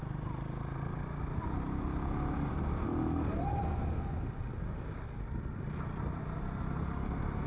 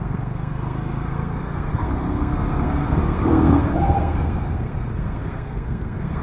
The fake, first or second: second